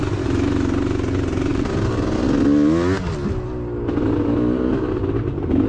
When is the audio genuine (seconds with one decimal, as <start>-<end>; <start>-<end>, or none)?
0.0-5.7